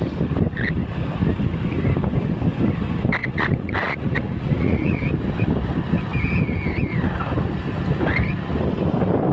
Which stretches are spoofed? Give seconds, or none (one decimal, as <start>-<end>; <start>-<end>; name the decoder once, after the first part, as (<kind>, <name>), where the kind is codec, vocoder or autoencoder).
3.2-5.0 (vocoder, Vocos)